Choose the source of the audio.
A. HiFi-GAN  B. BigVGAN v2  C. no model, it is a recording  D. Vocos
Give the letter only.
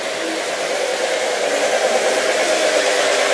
C